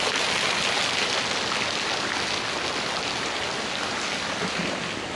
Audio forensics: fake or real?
real